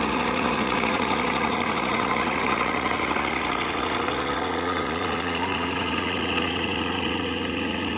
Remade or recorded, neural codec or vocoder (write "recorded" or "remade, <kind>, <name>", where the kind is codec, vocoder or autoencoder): remade, vocoder, Vocos